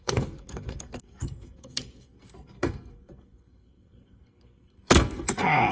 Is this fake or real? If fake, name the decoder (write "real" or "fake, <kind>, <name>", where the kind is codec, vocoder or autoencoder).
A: fake, codec, SNAC